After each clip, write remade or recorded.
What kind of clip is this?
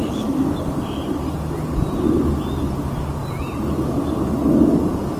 recorded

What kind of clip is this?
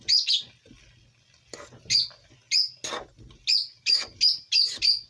recorded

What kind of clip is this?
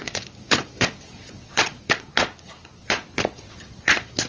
remade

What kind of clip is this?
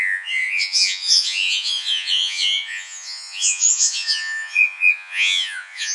remade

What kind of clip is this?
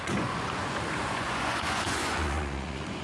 remade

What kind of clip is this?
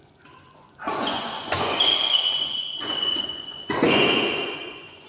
remade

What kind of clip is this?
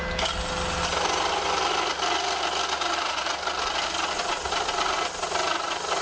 recorded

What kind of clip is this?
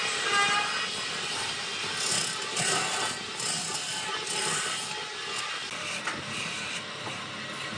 recorded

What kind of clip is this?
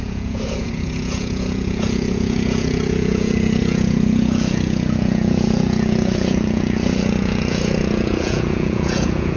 remade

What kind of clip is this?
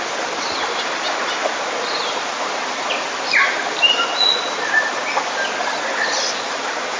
recorded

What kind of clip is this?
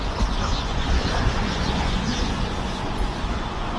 remade